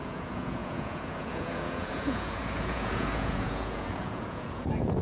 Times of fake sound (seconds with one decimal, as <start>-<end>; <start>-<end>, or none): 0.0-5.0